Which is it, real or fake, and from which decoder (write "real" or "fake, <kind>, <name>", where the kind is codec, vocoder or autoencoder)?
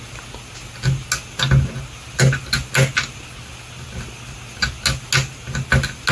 real